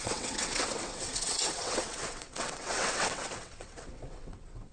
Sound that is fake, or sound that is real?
fake